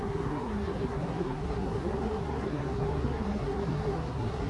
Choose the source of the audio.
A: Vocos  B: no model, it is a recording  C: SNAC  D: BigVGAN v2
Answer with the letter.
C